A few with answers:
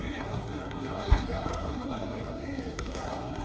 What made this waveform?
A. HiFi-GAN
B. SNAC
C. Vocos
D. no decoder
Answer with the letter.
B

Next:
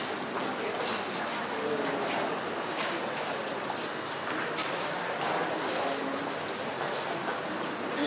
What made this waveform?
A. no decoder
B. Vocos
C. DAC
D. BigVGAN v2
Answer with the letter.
A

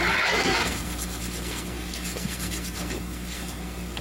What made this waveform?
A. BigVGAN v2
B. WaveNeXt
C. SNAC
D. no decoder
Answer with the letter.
C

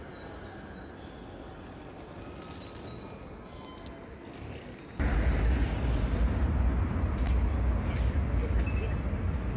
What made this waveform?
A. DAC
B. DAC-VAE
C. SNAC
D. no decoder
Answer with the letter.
D